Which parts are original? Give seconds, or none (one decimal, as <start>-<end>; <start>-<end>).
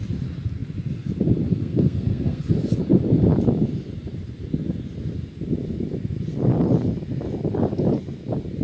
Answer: 0.0-1.6; 2.4-8.6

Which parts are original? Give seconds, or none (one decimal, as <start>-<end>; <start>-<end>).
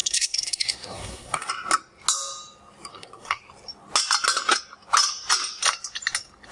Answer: 1.5-2.9; 3.4-6.5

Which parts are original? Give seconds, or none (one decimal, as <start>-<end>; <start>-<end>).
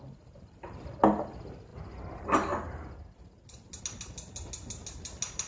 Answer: 0.0-5.5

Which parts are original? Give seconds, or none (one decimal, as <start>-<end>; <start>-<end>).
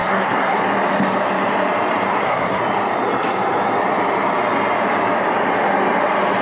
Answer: 0.6-2.1; 2.6-6.4